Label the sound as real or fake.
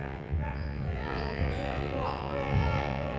fake